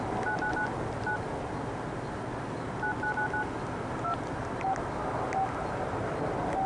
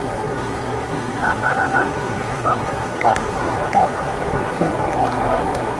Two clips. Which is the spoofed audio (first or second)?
second